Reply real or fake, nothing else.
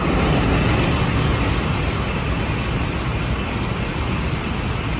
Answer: real